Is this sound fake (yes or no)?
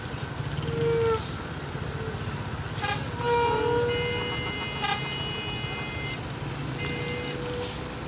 no